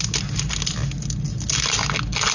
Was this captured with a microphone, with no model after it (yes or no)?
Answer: yes